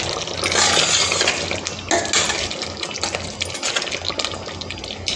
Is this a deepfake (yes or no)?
no